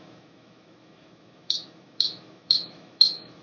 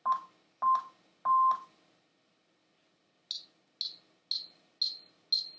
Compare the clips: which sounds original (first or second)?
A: second